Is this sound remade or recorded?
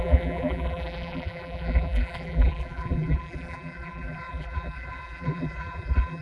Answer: remade